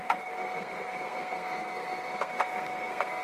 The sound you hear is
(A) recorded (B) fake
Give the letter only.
B